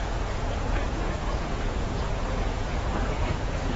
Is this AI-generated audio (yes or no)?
yes